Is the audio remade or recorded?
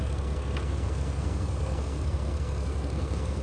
remade